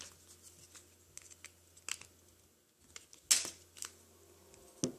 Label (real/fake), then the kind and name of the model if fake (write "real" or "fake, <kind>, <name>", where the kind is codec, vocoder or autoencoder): real